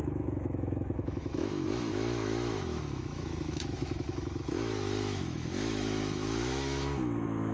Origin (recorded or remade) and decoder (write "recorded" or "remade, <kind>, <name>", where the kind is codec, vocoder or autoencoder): remade, autoencoder, DAC-VAE